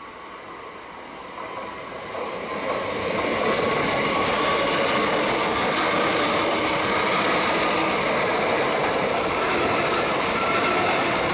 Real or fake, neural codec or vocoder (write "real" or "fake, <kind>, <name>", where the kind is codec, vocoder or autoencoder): real